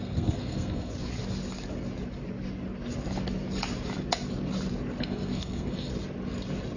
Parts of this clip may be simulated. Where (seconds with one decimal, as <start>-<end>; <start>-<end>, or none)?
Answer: 0.0-0.9; 5.0-5.9